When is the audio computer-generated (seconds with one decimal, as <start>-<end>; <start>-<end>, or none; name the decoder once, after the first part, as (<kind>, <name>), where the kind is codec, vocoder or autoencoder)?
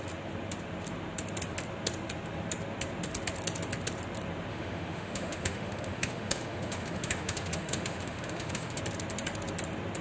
4.5-8.8 (autoencoder, DAC-VAE)